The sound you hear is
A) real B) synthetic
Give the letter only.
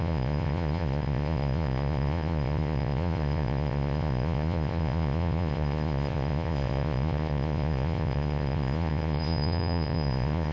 B